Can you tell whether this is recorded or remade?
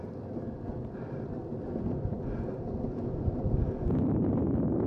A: recorded